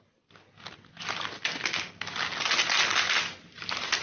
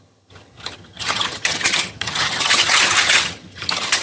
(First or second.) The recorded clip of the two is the first